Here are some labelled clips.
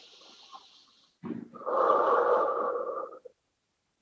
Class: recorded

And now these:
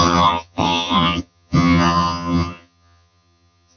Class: remade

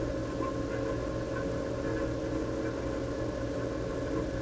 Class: recorded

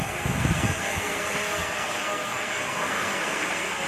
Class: remade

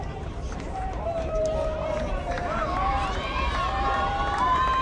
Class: remade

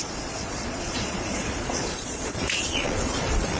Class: remade